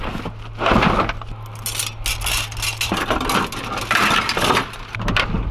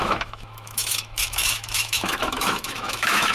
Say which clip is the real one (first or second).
first